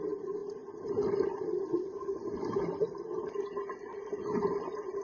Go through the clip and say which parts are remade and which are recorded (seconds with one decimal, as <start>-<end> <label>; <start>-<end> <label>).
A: 0.0-5.0 recorded